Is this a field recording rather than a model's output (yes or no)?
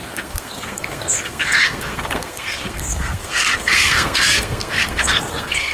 no